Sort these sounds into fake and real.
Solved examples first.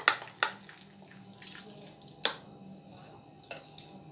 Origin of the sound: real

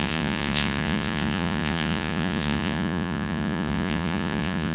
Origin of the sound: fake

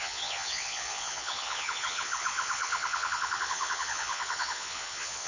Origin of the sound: fake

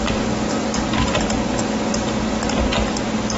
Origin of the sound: real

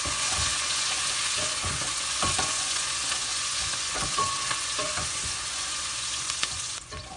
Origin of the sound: fake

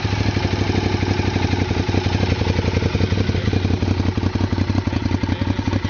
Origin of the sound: real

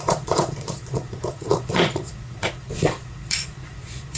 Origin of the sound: fake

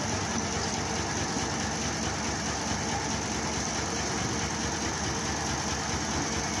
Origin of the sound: real